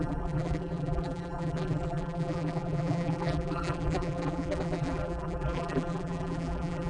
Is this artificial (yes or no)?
yes